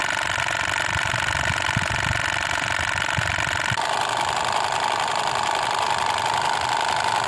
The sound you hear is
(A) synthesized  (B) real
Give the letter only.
B